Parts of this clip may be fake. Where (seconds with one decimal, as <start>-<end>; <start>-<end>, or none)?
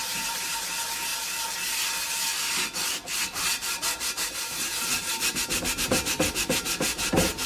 0.0-1.1; 3.2-7.5